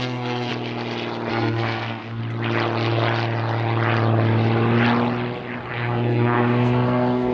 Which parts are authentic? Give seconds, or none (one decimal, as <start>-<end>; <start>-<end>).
0.5-1.3; 2.2-5.7